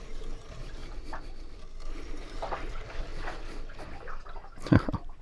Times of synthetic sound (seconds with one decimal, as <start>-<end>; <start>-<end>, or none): 0.0-0.8; 2.1-3.1; 4.4-5.2